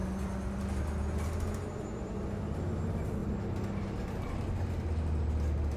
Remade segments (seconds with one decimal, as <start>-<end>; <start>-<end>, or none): none